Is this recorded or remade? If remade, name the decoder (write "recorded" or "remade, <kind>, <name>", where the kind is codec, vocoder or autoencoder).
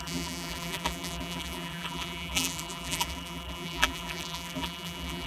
remade, vocoder, BigVGAN v2